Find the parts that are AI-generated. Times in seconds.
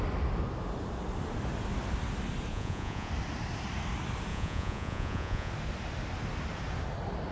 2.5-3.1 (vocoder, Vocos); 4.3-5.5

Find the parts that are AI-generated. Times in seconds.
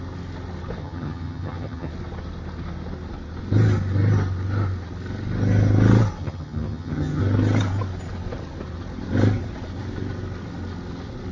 0.8-1.9 (vocoder, HiFi-GAN); 6.2-7.2